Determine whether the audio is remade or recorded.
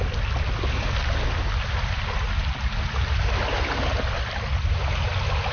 recorded